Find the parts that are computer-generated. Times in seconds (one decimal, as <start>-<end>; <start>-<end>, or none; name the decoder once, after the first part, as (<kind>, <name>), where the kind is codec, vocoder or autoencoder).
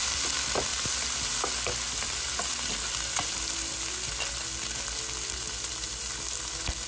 none